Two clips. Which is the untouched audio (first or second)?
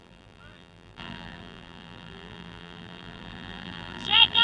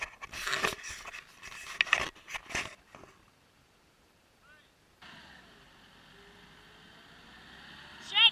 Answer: second